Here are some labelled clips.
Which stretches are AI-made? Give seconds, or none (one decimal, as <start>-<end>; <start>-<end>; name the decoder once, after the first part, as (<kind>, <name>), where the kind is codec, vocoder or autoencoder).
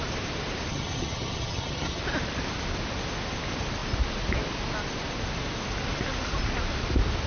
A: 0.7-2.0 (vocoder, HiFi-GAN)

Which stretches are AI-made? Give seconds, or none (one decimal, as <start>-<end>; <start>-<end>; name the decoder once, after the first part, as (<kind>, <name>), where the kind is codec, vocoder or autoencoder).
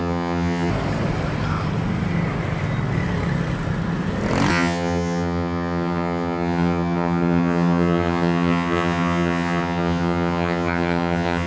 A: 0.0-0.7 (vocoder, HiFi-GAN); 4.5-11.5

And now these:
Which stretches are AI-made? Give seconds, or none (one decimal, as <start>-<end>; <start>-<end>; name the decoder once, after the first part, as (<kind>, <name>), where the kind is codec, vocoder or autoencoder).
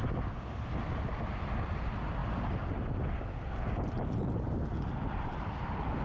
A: none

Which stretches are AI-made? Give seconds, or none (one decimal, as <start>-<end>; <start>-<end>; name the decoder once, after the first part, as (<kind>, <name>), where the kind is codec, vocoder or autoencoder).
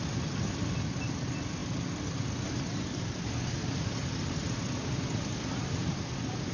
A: none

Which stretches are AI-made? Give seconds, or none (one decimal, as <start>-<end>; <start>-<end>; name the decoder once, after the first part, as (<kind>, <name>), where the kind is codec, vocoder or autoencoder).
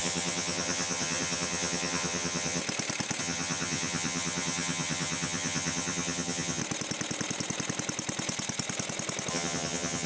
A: 0.0-2.6 (vocoder, HiFi-GAN); 3.2-6.6; 9.3-10.1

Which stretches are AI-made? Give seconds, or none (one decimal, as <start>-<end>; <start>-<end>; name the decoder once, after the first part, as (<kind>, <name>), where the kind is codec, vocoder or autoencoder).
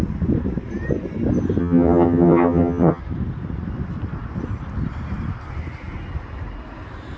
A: 1.6-3.0 (vocoder, HiFi-GAN)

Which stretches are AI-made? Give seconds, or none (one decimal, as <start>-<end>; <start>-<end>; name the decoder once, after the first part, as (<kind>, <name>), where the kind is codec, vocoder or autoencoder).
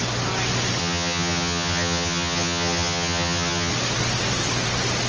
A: 0.8-3.7 (vocoder, HiFi-GAN)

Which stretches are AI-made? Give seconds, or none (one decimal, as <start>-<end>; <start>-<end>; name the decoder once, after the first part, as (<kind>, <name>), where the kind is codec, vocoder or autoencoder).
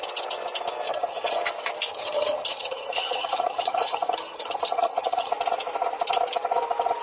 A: 0.9-1.4 (vocoder, HiFi-GAN); 1.9-5.3